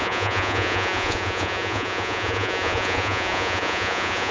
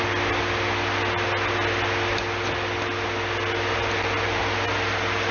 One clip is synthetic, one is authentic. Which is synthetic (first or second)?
first